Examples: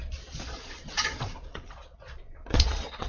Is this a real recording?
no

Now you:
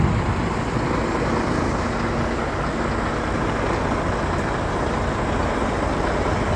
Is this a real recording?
yes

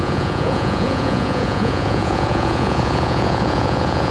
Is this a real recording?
no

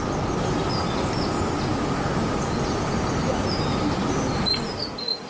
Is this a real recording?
yes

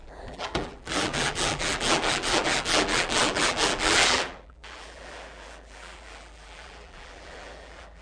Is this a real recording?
no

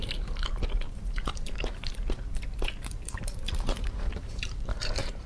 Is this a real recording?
no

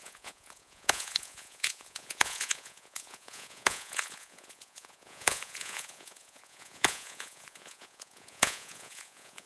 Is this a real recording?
no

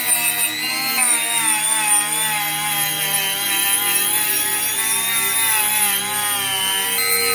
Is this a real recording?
yes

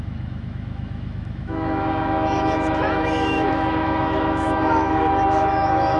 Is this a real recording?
no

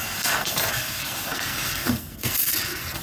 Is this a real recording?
no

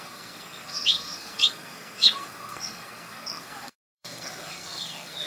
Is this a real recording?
no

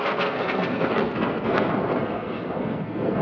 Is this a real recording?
no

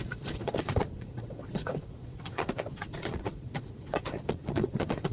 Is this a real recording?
no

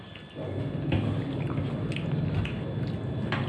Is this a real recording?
yes